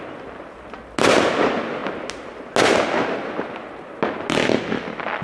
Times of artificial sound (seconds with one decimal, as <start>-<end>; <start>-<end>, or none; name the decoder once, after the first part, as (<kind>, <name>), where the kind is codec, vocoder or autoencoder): none